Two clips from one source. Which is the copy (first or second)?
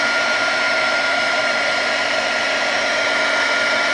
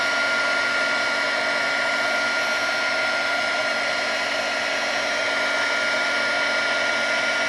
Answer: first